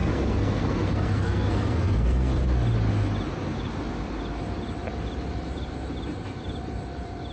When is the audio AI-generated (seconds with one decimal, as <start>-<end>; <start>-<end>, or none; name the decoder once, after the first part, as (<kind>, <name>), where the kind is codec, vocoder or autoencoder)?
0.0-2.4 (codec, SNAC)